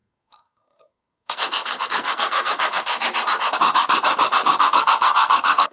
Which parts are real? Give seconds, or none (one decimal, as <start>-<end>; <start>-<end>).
2.9-4.6